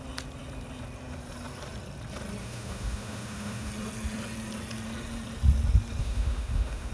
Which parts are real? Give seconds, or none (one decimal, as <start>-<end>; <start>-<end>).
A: 0.0-2.4; 3.7-6.0